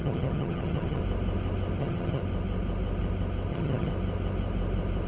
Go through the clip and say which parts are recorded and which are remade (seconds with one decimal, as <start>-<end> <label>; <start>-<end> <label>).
0.0-1.0 remade; 1.0-1.8 recorded; 1.8-2.2 remade; 2.2-3.5 recorded; 3.5-3.9 remade; 3.9-5.1 recorded